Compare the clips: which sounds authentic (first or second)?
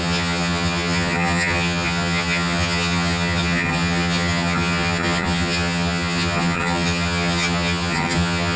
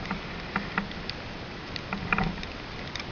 second